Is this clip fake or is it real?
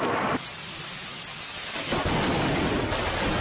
real